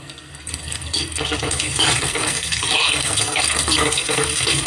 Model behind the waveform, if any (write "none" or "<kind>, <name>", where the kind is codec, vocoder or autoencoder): codec, SNAC